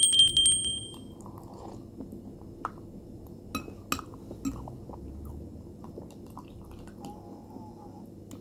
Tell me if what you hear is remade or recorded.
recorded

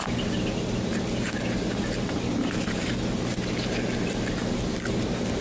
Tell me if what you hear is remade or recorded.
recorded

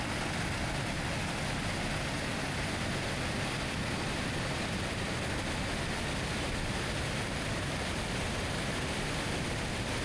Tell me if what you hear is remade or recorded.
recorded